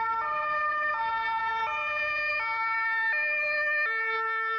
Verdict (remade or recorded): recorded